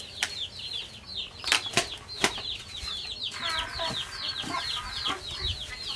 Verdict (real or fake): real